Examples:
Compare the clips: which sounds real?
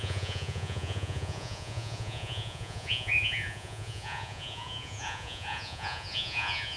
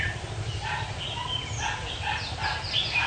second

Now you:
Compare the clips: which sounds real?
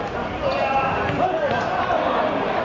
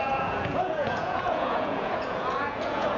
first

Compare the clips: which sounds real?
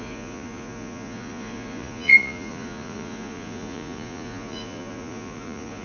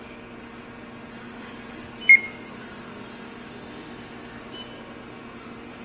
second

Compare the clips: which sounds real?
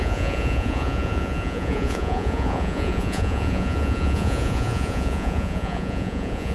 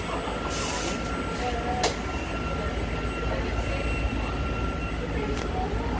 second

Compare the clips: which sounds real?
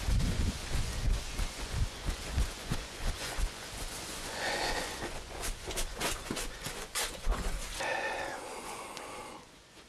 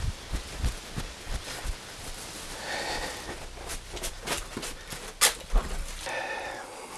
second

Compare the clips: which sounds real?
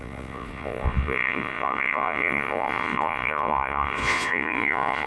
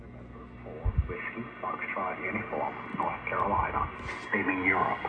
second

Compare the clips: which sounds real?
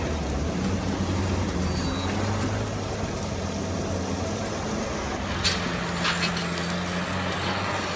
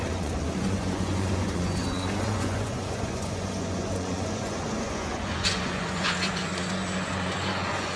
first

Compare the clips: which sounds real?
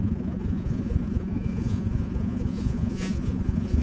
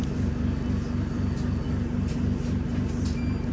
second